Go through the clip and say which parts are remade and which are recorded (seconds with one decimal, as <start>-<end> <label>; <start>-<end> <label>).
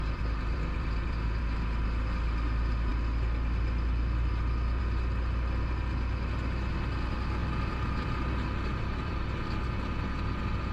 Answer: 0.0-1.4 remade; 1.4-7.4 recorded; 7.4-9.1 remade; 9.1-10.7 recorded